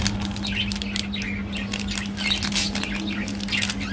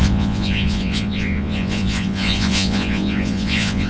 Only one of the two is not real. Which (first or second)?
second